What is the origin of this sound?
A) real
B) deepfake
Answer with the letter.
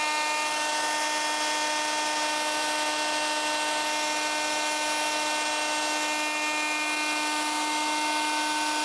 A